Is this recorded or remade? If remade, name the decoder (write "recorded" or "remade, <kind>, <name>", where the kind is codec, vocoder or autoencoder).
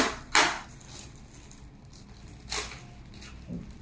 recorded